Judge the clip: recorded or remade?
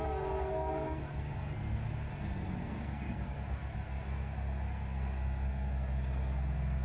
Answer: remade